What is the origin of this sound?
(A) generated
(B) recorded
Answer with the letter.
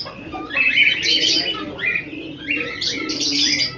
B